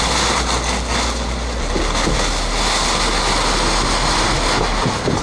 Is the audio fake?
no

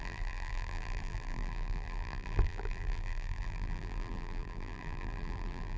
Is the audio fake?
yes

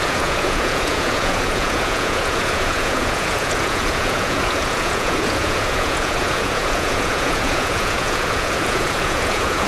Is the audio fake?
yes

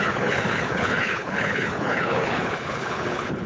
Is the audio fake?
yes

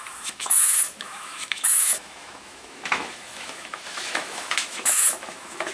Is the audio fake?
yes